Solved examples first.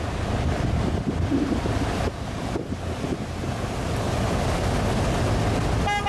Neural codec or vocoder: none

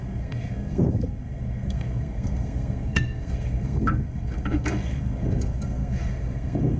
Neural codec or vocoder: codec, SNAC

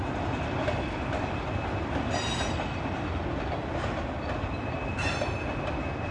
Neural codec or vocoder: none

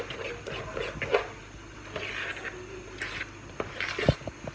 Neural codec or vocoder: none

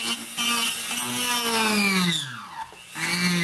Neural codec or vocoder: none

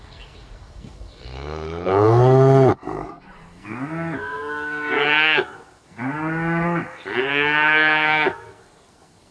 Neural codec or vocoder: codec, SNAC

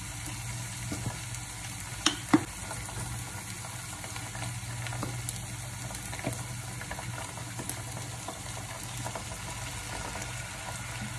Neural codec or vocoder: none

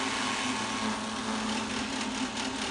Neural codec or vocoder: none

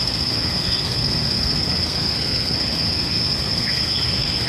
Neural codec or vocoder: codec, SNAC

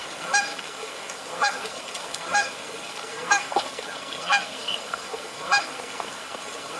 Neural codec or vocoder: codec, SNAC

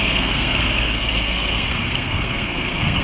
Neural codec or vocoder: codec, SNAC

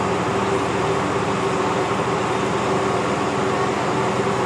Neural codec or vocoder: none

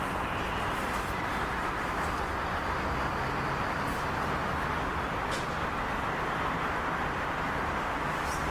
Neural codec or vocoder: none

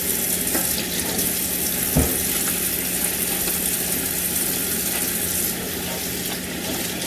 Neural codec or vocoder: none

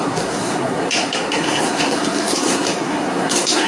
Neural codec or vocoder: codec, SNAC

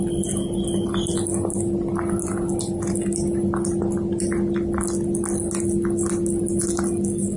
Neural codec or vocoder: none